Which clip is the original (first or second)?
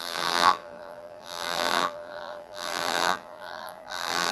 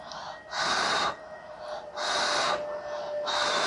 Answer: second